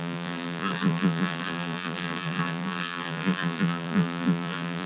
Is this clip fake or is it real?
fake